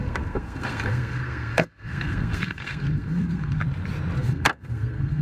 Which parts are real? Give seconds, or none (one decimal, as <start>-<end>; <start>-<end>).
3.6-4.2